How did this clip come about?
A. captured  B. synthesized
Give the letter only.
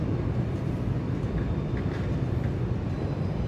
B